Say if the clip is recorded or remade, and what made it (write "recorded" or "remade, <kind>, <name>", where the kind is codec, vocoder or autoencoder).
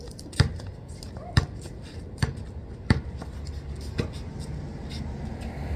recorded